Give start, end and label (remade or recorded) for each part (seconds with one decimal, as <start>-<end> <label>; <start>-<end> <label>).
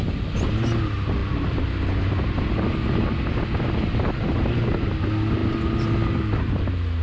0.0-7.0 recorded